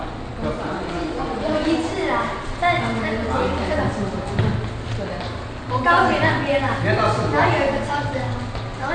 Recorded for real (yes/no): yes